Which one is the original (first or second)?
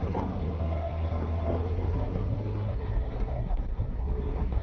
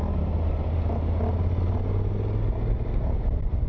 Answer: second